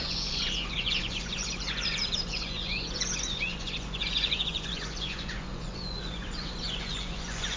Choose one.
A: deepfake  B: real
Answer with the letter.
A